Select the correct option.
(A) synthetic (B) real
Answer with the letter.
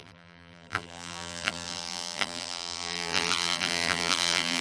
A